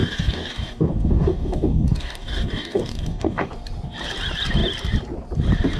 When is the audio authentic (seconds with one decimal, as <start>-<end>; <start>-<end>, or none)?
3.5-5.8